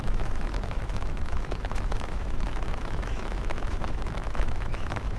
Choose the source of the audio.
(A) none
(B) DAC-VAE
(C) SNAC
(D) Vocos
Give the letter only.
B